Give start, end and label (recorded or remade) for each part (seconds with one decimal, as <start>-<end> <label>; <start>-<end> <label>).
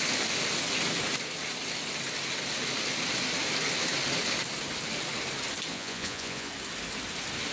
0.0-5.7 recorded; 5.7-6.5 remade; 6.5-7.5 recorded